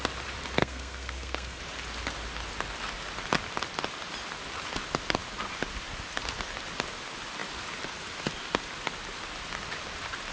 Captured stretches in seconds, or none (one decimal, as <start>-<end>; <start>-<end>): 0.0-0.6; 1.6-10.3